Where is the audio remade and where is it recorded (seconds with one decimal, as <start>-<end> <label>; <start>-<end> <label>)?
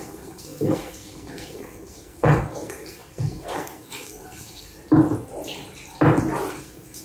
0.0-4.7 remade; 4.7-6.5 recorded; 6.5-7.0 remade